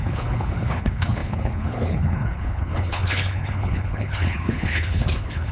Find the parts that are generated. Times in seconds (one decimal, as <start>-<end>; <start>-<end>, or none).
0.0-5.5